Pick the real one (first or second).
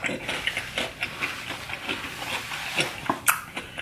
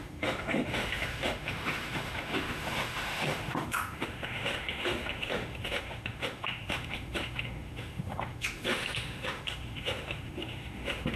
first